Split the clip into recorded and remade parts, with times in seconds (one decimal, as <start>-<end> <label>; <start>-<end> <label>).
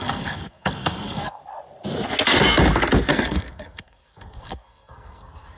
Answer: 0.0-1.4 remade; 1.4-3.1 recorded; 3.1-5.6 remade